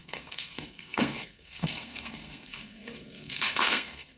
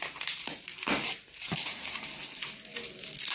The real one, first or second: second